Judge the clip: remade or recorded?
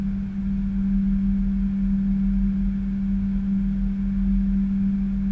recorded